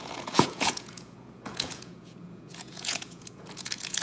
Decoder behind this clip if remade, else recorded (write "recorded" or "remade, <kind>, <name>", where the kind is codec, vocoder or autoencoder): remade, vocoder, Vocos